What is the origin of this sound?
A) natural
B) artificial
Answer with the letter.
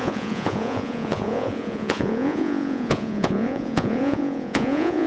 B